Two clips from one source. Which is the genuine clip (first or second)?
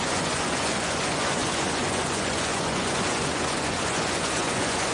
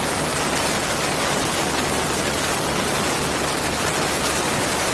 second